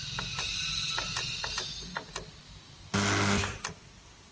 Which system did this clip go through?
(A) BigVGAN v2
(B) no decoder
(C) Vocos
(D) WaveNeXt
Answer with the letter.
B